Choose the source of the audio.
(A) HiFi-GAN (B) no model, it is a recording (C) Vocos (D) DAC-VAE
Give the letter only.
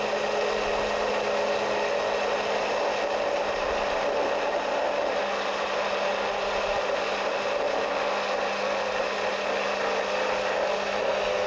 B